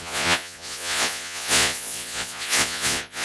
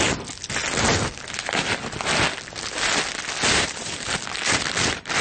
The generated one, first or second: first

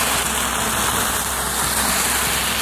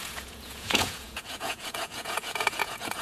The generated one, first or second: second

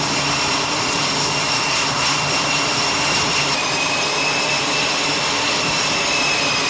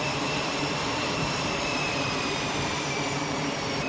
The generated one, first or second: second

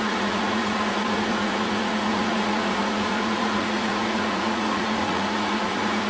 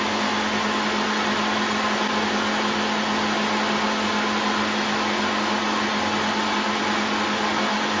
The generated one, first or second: first